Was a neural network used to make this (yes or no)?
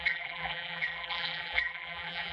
yes